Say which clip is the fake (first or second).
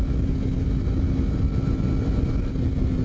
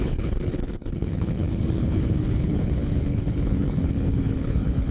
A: second